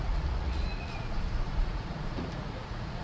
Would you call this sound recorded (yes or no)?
no